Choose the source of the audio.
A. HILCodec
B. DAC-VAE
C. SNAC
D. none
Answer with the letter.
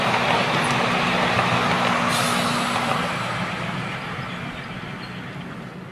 D